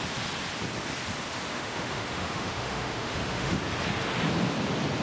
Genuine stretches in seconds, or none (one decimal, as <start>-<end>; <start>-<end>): 0.0-1.5; 3.6-5.0